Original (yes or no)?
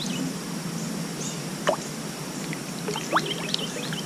yes